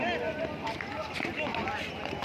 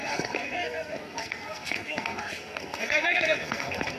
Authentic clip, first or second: first